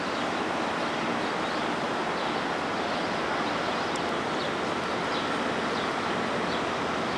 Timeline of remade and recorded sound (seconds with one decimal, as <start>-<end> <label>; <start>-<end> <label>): 0.0-7.2 recorded